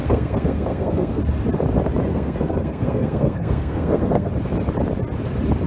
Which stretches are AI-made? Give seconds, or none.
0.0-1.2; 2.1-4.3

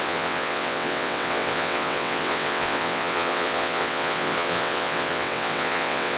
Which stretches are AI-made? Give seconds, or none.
0.0-6.2

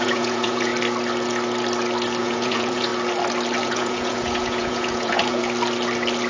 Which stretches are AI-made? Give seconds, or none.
0.0-0.7; 2.2-2.9; 3.6-5.4

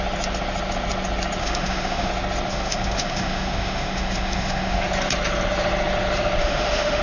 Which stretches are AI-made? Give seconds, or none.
1.4-2.1; 2.5-4.8; 6.4-7.0

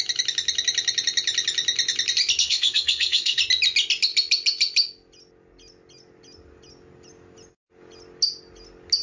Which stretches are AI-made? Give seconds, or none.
2.4-3.4

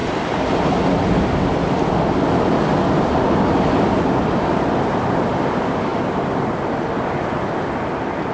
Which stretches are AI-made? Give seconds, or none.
none